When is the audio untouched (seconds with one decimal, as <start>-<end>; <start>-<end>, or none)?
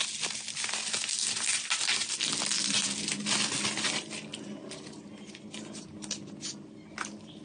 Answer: 0.0-7.4